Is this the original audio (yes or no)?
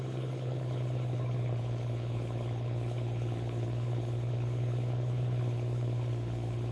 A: no